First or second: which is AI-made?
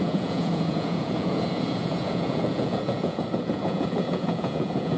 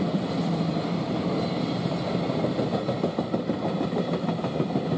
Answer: first